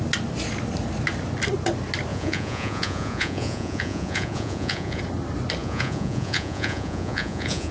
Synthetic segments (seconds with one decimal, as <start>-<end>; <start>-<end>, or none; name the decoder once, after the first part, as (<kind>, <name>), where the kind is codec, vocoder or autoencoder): 2.1-5.0 (vocoder, Vocos); 5.6-7.7

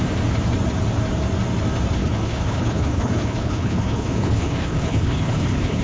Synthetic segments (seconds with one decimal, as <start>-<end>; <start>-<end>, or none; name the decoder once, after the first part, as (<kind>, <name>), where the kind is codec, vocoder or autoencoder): 2.0-5.8 (codec, HILCodec)